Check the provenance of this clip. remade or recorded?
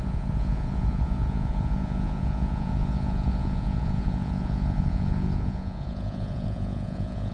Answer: remade